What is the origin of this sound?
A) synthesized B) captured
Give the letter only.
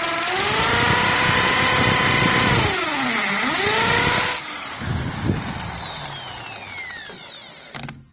B